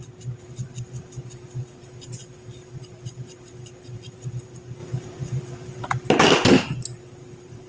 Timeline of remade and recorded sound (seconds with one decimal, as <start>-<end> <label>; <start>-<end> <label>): 0.0-7.7 recorded